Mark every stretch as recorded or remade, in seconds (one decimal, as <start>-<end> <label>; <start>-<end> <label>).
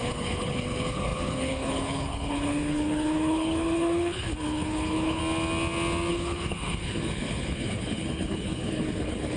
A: 0.0-5.2 remade; 5.2-6.1 recorded; 6.1-9.4 remade